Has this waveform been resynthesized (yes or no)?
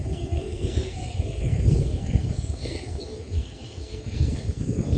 yes